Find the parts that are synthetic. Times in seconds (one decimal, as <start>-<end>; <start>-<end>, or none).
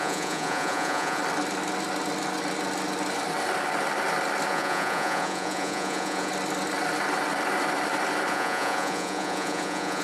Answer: 0.0-1.2; 4.5-6.3; 8.3-10.0